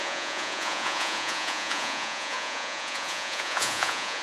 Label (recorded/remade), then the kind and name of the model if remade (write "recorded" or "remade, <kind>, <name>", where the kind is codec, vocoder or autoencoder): remade, vocoder, Vocos